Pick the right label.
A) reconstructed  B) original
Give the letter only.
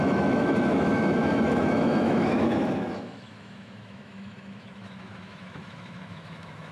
A